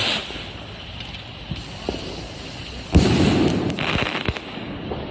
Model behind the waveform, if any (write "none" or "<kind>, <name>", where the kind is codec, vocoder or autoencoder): vocoder, BigVGAN v2